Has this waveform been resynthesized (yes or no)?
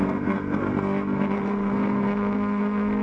yes